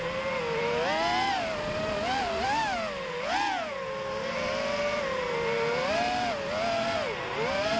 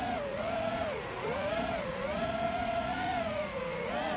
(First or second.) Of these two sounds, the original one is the first